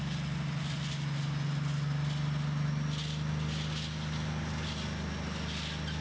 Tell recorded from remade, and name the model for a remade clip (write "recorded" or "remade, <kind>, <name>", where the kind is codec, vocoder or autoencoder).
recorded